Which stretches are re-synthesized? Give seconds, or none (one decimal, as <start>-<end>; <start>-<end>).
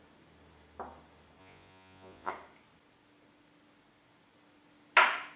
1.4-2.3